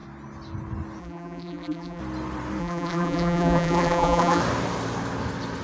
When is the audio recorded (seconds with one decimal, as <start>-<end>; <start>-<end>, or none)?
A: 0.0-1.0; 2.0-2.6; 4.4-5.6

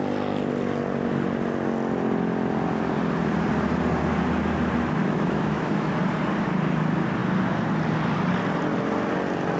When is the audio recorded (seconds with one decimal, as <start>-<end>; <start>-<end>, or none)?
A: 0.0-5.0; 5.9-9.6

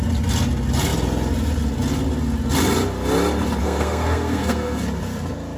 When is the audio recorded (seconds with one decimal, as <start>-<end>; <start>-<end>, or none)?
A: 0.0-3.6; 4.8-5.6

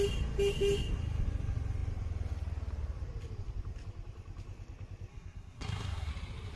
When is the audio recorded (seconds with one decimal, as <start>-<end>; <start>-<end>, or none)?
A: 0.0-5.1; 6.1-6.6

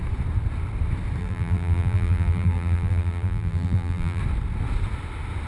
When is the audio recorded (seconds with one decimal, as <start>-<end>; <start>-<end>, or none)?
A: 0.0-1.2; 4.2-5.5